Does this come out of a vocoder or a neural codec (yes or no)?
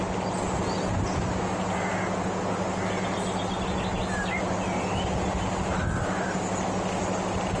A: no